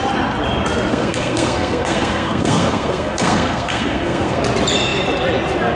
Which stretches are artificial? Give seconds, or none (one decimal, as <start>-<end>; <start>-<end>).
0.9-4.4